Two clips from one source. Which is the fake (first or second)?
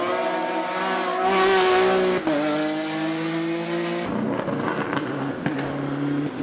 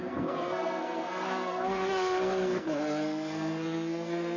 second